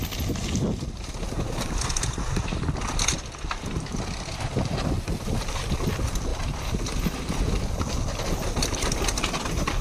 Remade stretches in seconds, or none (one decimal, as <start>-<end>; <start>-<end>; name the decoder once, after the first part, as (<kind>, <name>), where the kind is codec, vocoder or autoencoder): none